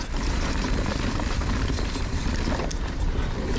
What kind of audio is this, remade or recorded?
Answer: recorded